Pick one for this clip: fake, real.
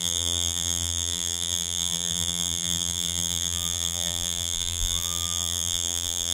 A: fake